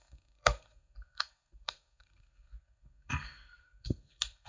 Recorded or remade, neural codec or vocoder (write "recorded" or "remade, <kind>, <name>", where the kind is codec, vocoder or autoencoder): remade, codec, SNAC